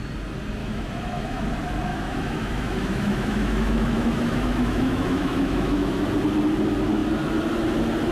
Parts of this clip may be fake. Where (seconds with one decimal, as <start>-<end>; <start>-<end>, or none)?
0.6-1.4; 1.9-6.1